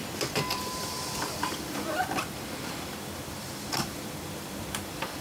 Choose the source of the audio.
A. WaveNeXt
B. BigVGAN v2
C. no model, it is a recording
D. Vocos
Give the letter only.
B